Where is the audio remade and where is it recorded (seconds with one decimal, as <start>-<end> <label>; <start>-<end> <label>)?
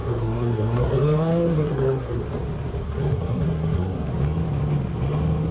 0.0-2.2 remade; 2.2-2.8 recorded; 2.8-4.1 remade; 4.1-5.5 recorded